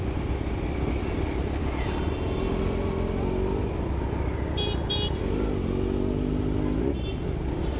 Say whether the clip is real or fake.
real